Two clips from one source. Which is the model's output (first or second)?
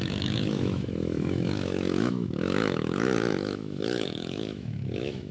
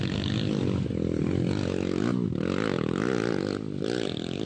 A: first